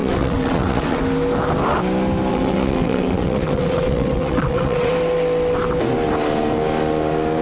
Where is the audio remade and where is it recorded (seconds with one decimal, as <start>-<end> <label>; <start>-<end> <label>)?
0.0-1.0 remade; 1.0-2.3 recorded; 2.3-4.9 remade; 4.9-7.4 recorded